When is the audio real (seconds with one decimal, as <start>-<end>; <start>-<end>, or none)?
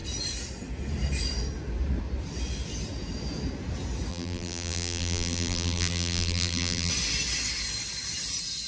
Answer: 0.0-4.1; 6.9-8.7